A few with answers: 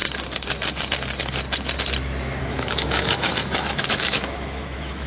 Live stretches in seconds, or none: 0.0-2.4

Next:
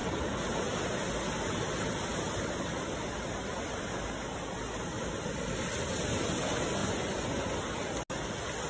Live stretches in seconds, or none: 0.0-6.8; 7.4-8.7